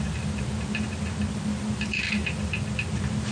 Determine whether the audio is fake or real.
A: real